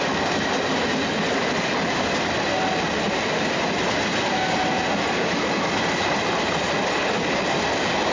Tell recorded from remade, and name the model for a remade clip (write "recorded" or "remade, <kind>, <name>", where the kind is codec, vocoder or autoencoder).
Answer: recorded